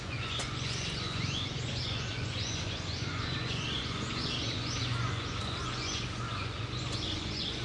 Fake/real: fake